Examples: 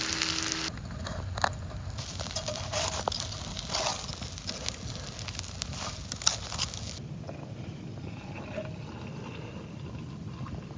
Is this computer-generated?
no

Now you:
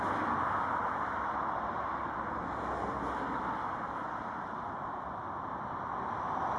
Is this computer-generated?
no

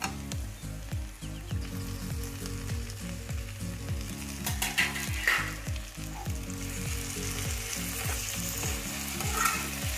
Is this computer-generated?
no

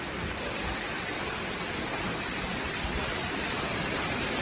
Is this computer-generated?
yes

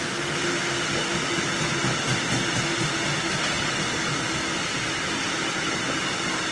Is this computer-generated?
no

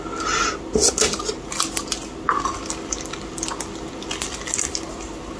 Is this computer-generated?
no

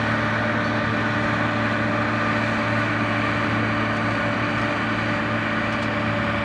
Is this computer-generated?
no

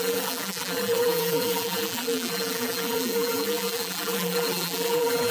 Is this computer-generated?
yes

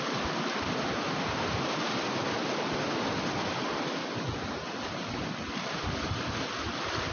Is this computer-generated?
no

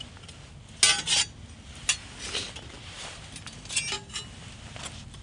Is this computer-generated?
no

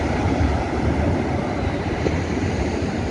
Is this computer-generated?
yes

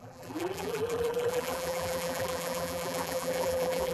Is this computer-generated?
yes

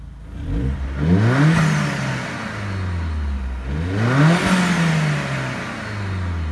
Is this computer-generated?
no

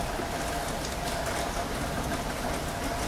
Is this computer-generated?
no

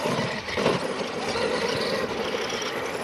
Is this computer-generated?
no